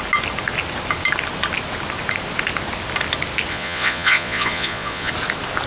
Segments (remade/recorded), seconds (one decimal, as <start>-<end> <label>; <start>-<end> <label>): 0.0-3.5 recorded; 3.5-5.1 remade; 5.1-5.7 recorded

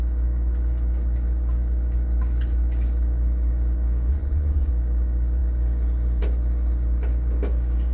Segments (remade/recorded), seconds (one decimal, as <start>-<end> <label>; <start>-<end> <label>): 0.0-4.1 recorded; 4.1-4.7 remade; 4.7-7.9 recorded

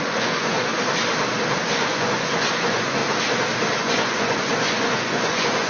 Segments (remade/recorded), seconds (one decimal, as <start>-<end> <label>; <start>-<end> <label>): 0.0-0.7 remade; 0.7-1.6 recorded; 1.6-3.0 remade; 3.0-3.8 recorded; 3.8-5.7 remade

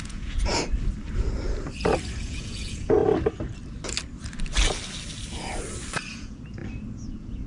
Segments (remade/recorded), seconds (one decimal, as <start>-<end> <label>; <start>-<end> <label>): 0.0-0.5 remade; 0.5-2.2 recorded; 2.2-3.0 remade; 3.0-6.1 recorded; 6.1-6.6 remade; 6.6-7.1 recorded; 7.1-7.5 remade

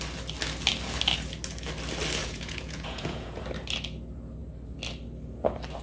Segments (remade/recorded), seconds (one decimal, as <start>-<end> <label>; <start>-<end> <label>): 0.0-2.2 recorded; 2.2-3.4 remade; 3.4-5.8 recorded